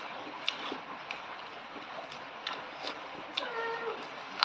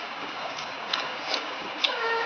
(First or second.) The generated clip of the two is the second